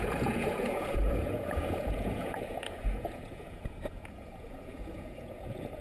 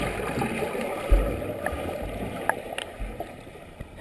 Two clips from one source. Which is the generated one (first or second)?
first